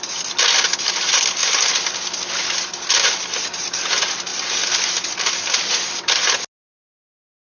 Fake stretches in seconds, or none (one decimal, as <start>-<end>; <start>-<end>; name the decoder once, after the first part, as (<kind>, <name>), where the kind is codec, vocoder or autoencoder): none